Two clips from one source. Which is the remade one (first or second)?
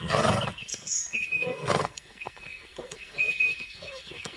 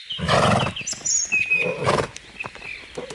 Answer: first